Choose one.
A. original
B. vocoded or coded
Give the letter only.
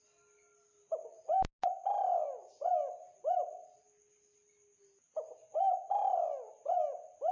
A